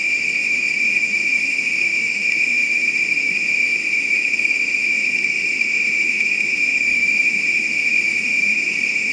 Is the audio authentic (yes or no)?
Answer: no